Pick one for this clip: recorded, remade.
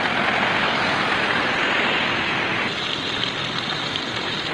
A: recorded